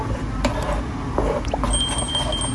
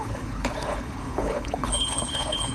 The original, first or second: first